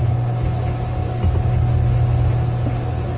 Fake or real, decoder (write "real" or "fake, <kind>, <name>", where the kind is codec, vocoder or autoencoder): real